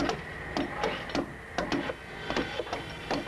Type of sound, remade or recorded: recorded